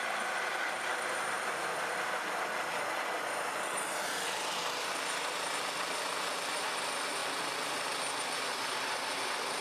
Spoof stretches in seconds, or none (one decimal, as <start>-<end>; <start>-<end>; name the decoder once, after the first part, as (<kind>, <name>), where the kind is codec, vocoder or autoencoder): none